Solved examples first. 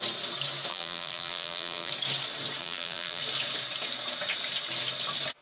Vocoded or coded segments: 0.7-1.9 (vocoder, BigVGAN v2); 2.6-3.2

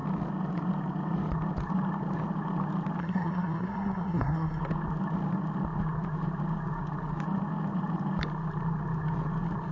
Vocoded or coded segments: 3.0-4.6 (codec, SNAC)

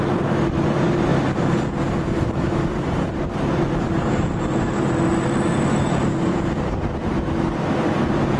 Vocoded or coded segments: none